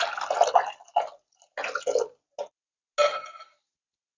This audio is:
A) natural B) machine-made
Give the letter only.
A